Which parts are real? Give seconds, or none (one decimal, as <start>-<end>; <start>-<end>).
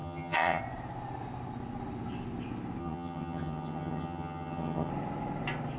0.6-2.8; 4.9-5.8